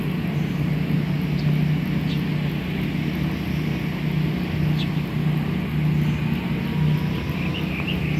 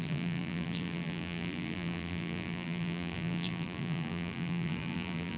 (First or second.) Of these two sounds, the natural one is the first